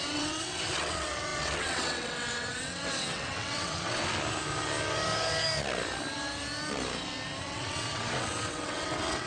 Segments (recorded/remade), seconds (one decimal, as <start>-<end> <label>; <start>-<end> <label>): 0.0-4.0 remade; 4.0-7.4 recorded; 7.4-9.3 remade